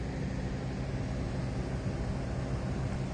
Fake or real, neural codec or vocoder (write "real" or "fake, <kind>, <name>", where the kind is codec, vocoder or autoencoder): real